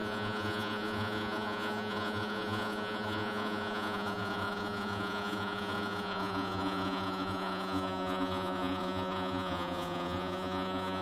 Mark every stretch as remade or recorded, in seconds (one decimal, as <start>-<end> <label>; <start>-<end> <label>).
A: 0.0-11.0 remade